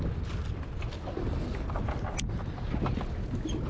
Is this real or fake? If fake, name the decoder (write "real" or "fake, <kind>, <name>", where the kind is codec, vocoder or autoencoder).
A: real